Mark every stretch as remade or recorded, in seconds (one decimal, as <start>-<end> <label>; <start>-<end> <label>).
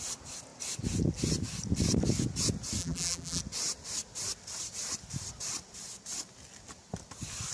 0.0-2.8 recorded; 2.8-3.4 remade; 3.4-7.5 recorded